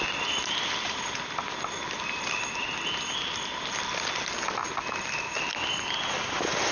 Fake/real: real